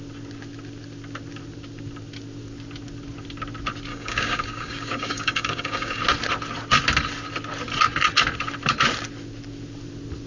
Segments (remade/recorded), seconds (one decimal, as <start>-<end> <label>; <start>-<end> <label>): 0.0-3.9 recorded; 3.9-6.0 remade; 6.0-10.3 recorded